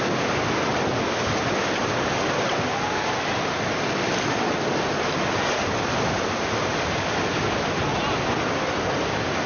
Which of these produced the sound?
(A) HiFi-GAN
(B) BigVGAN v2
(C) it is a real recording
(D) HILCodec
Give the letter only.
C